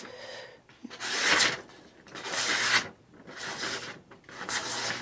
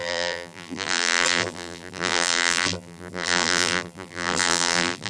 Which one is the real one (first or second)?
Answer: first